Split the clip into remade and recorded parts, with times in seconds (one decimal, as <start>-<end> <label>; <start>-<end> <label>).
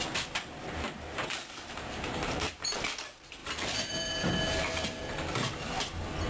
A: 0.0-1.1 recorded; 1.1-2.8 remade; 2.8-3.4 recorded; 3.4-5.7 remade; 5.7-6.3 recorded